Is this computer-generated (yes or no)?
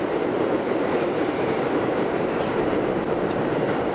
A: yes